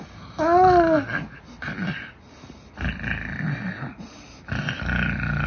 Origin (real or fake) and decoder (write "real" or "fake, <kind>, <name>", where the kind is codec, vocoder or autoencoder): real